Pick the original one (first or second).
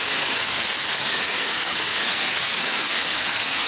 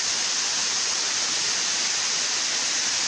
second